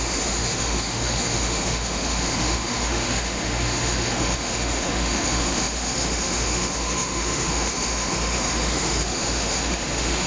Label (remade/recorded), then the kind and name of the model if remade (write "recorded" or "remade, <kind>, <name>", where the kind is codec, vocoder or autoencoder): remade, autoencoder, DAC-VAE